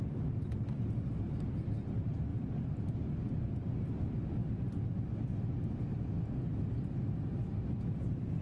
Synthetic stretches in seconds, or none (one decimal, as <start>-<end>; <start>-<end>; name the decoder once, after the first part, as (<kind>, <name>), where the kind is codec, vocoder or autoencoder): 2.3-3.4 (vocoder, BigVGAN v2)